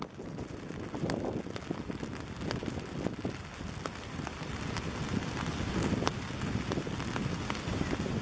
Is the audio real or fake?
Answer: real